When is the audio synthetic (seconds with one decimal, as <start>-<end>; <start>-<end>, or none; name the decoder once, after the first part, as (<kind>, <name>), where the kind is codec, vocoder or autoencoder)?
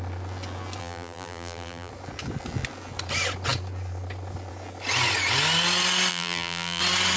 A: 0.8-1.9 (vocoder, BigVGAN v2); 6.1-6.8